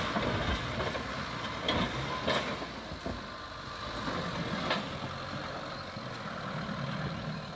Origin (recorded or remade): recorded